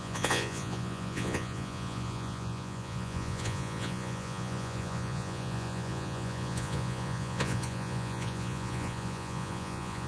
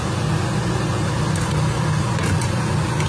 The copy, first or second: first